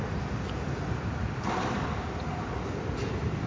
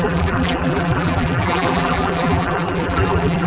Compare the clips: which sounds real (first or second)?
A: first